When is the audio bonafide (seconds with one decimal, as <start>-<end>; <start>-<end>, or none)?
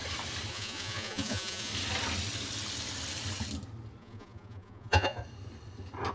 0.0-0.5; 1.7-4.0; 5.2-6.1